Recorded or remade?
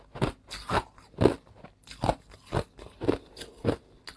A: recorded